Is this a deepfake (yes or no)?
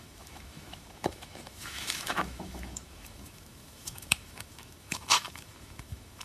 yes